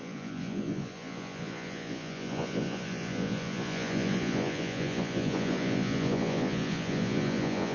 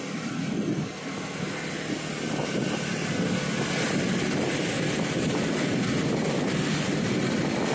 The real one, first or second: second